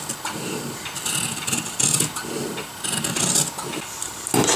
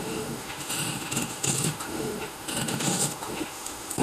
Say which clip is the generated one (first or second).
second